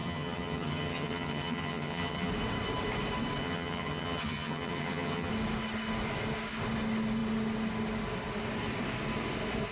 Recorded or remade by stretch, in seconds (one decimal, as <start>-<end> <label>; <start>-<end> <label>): 0.0-2.3 remade; 2.3-3.4 recorded; 3.4-5.3 remade; 5.3-9.7 recorded